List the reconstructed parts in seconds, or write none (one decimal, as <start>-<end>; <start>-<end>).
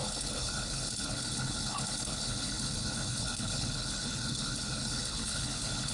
0.0-5.9